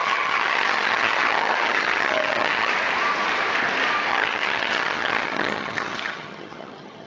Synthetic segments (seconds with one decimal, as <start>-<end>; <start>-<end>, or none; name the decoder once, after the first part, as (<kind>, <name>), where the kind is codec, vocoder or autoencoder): 0.0-2.7 (vocoder, HiFi-GAN); 4.1-7.1